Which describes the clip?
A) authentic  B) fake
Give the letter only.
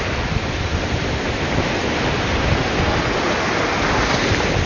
A